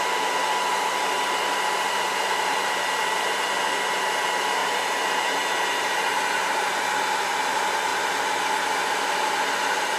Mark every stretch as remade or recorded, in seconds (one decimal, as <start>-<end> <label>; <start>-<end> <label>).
0.0-0.7 recorded; 0.7-3.6 remade; 3.6-4.6 recorded; 4.6-6.8 remade; 6.8-10.0 recorded